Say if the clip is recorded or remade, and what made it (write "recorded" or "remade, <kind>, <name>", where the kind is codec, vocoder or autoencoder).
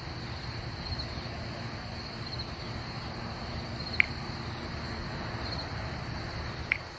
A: recorded